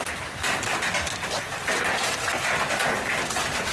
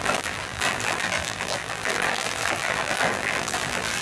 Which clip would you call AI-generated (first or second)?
second